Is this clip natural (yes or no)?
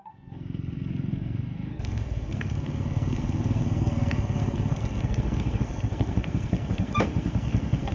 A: no